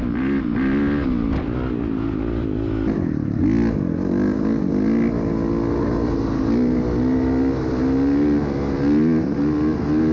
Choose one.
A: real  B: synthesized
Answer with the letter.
A